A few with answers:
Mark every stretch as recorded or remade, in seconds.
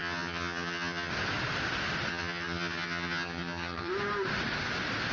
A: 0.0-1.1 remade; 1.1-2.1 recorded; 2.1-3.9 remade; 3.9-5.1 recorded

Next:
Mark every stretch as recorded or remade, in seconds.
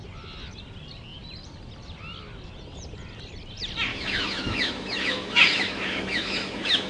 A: 0.0-3.9 recorded; 3.9-6.9 remade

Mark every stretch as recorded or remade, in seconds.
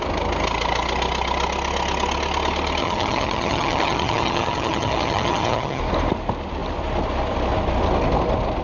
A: 0.0-2.8 recorded; 2.8-5.8 remade; 5.8-8.6 recorded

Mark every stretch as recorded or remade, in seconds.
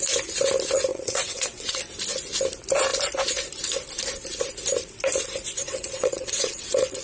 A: 0.0-0.9 recorded; 0.9-1.8 remade; 1.8-5.6 recorded; 5.6-7.0 remade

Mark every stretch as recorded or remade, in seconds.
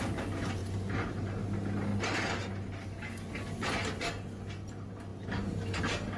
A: 0.0-6.2 recorded